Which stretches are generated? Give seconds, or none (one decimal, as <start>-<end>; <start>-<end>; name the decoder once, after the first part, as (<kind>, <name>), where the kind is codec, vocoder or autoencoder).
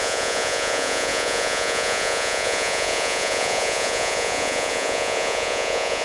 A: 0.0-6.0 (vocoder, Vocos)